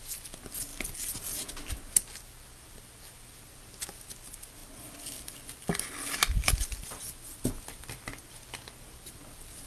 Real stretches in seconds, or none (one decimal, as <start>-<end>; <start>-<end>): 0.0-9.7